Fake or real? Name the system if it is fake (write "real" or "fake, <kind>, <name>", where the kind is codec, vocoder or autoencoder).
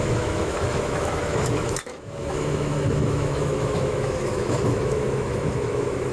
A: fake, autoencoder, DAC-VAE